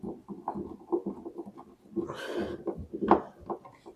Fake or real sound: real